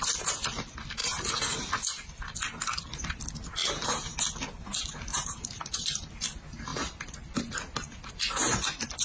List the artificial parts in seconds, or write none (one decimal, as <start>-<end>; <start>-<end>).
1.0-1.7; 3.6-4.1; 5.1-6.1; 6.7-7.4